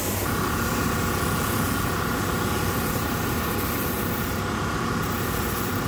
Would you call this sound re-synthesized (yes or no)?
no